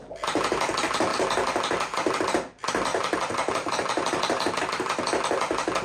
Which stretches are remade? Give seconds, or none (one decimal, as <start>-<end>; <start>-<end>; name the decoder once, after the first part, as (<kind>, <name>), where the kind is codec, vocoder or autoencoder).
2.9-4.6 (vocoder, BigVGAN v2)